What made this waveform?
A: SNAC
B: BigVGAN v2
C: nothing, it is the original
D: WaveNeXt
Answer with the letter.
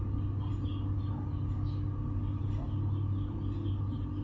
C